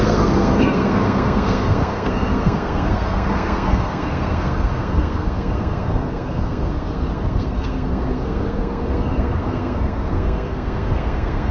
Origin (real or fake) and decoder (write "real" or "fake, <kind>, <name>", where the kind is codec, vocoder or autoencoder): fake, codec, SNAC